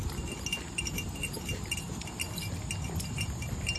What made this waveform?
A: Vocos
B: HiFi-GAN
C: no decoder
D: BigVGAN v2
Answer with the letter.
C